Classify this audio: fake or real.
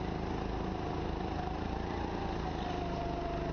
real